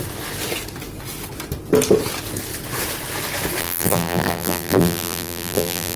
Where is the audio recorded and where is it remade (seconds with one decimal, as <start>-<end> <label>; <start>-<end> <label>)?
0.0-3.6 recorded; 3.6-6.0 remade